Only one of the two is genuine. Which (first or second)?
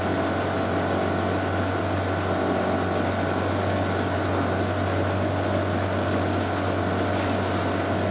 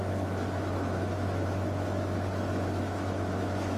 first